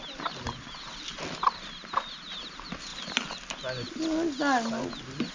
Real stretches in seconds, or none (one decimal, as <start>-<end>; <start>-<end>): 0.0-5.3